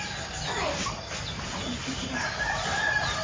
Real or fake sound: real